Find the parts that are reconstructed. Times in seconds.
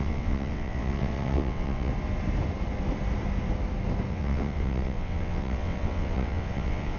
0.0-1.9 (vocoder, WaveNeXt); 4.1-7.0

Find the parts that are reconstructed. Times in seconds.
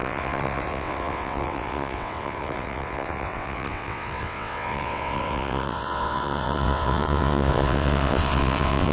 0.0-8.9 (vocoder, WaveNeXt)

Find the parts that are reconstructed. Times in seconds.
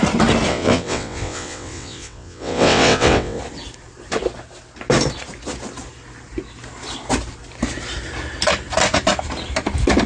0.5-3.4 (vocoder, WaveNeXt)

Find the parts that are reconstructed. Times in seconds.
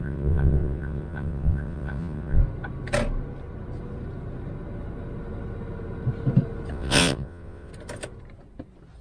0.0-2.4 (vocoder, WaveNeXt); 6.7-7.7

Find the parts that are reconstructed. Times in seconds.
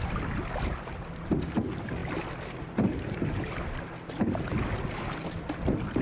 none